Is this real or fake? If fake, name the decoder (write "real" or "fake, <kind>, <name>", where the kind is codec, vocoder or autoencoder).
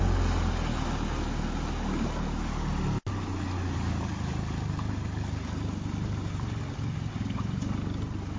real